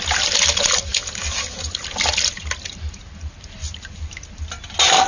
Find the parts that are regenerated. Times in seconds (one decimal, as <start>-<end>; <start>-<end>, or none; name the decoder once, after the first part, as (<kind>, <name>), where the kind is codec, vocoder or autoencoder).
none